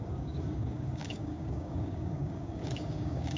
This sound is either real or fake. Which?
fake